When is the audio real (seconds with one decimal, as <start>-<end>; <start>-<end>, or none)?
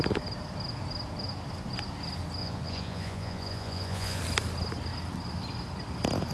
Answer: 0.0-2.4; 4.2-6.3